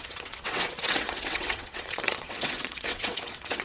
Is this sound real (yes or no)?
no